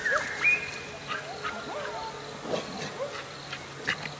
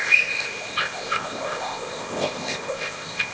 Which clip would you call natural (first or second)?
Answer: first